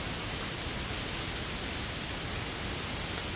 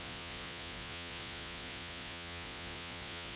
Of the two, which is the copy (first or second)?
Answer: second